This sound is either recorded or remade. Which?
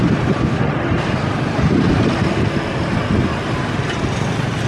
recorded